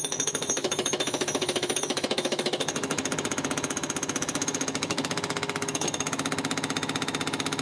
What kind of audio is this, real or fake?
fake